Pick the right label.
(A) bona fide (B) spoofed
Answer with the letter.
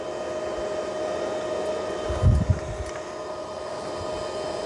A